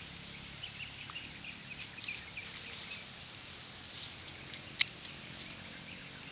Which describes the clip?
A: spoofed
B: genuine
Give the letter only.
B